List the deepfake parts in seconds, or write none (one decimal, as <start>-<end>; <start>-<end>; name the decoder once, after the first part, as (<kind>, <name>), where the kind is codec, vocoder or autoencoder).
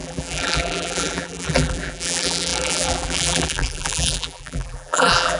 0.0-5.4 (vocoder, BigVGAN v2)